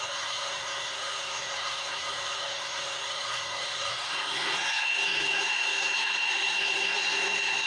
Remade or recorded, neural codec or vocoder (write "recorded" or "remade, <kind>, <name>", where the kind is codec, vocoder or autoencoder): remade, codec, SNAC